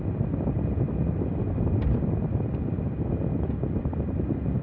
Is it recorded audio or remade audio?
recorded